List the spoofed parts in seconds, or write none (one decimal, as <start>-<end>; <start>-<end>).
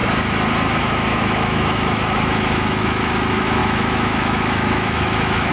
0.8-5.5